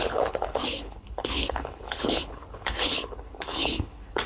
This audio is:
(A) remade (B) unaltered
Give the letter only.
A